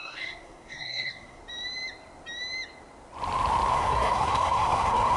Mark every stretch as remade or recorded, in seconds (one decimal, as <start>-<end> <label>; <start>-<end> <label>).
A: 0.0-1.4 remade; 1.4-3.7 recorded; 3.7-5.2 remade